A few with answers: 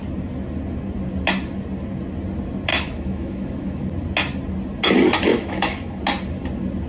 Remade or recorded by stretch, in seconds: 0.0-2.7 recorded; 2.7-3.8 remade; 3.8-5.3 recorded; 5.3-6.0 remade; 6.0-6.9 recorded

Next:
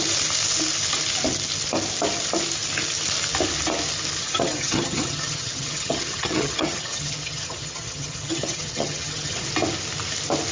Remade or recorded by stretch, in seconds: 0.0-4.2 recorded; 4.2-9.4 remade; 9.4-10.5 recorded